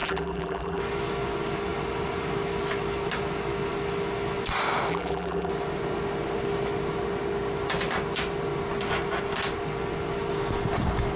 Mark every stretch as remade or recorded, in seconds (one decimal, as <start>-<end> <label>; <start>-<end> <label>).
0.0-0.8 remade; 0.8-4.9 recorded; 4.9-5.5 remade; 5.5-11.2 recorded